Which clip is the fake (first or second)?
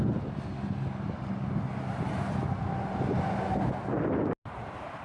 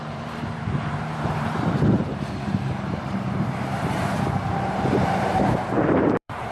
second